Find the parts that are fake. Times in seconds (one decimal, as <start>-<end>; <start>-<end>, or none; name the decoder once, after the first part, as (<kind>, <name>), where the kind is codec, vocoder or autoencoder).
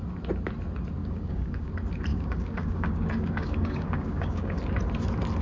1.0-1.7 (codec, DAC); 2.1-4.6